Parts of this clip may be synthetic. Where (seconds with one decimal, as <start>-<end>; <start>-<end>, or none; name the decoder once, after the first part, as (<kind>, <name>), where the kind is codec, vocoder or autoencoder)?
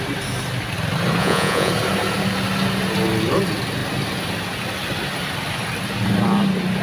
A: 1.2-1.7 (vocoder, Vocos)